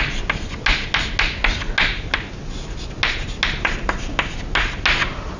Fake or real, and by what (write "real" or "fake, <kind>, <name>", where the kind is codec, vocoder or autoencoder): real